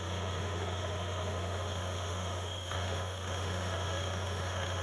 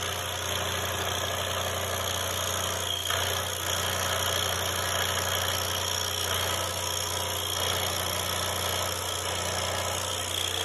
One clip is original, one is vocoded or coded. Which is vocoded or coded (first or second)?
first